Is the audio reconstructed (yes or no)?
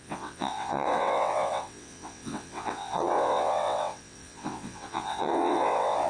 yes